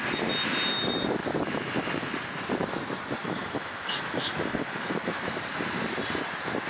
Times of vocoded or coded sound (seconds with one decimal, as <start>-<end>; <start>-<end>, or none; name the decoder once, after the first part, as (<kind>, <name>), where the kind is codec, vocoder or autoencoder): 3.2-5.3 (autoencoder, DAC-VAE)

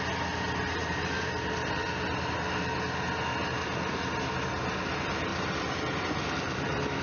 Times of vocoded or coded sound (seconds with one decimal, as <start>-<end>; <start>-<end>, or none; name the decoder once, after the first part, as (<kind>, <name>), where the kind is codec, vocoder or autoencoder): none

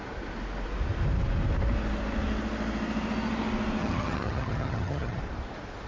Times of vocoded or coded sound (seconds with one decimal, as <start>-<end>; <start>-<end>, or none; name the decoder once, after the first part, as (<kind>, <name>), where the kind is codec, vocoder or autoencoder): 3.8-5.2 (vocoder, HiFi-GAN)

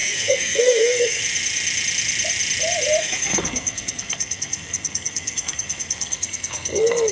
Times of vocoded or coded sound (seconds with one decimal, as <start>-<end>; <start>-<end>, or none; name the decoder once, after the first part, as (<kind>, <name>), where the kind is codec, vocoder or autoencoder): 0.0-1.2 (codec, SNAC); 3.0-7.1

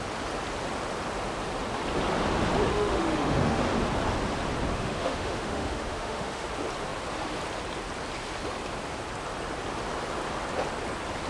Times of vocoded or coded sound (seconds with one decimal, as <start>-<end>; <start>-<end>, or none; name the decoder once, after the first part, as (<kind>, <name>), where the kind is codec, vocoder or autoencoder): 2.7-3.6 (autoencoder, DAC-VAE); 4.7-6.5